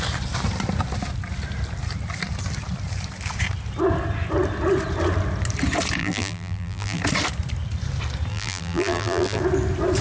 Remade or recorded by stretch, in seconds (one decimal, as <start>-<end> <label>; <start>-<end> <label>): 0.0-6.0 recorded; 6.0-7.0 remade; 7.0-8.3 recorded; 8.3-9.4 remade; 9.4-10.0 recorded